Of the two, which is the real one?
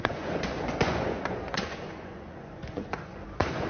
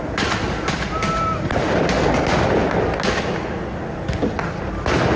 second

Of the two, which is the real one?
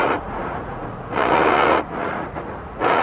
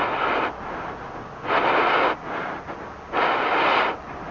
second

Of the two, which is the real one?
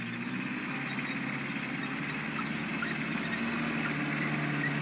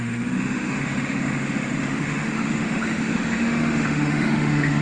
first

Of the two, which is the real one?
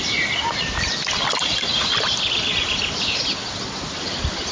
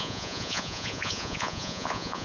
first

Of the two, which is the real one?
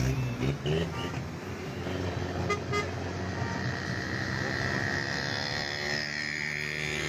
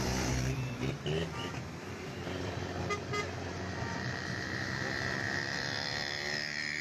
first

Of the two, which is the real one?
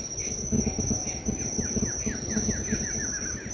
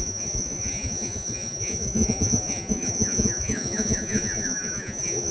first